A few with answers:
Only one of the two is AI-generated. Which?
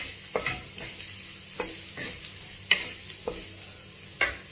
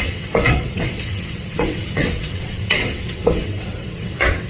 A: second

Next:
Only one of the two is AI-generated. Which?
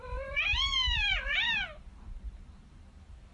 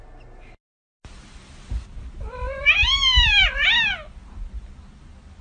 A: first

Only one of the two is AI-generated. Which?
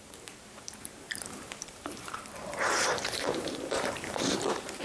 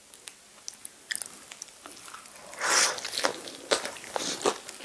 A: first